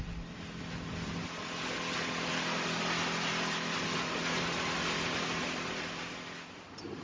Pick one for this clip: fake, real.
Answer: real